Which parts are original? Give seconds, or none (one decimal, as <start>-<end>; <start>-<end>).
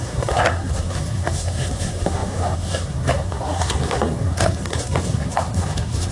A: none